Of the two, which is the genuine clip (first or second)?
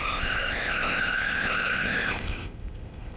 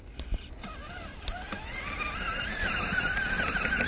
second